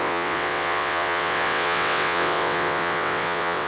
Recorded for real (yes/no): no